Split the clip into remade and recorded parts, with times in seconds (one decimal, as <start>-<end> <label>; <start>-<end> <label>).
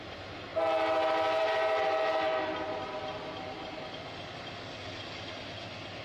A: 0.0-6.0 recorded